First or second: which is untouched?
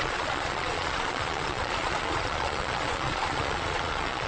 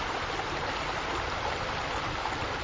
second